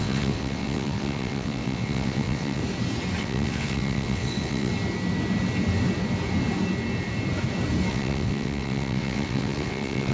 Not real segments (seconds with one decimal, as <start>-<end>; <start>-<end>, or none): 0.0-2.6; 3.2-4.7; 7.9-10.1